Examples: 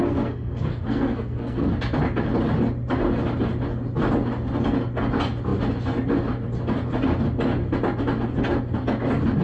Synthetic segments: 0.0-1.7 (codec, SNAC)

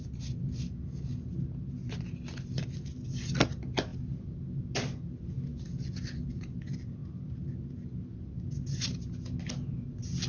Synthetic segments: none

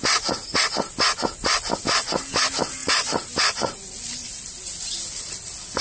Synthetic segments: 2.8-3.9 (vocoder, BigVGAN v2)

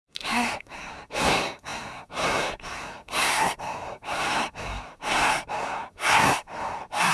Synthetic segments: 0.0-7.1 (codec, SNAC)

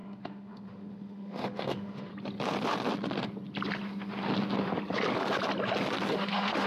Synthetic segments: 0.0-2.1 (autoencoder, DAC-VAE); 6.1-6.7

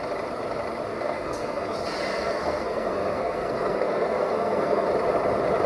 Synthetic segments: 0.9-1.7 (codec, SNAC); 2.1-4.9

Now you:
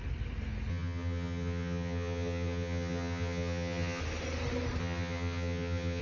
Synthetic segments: 0.7-4.0 (vocoder, HiFi-GAN); 4.8-6.0

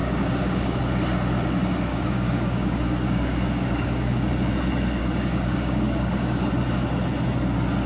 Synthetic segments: 0.0-0.8 (codec, DAC); 1.9-4.3; 5.0-6.5